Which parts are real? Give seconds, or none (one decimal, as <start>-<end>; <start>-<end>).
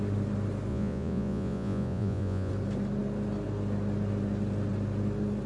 0.0-0.7; 2.5-5.5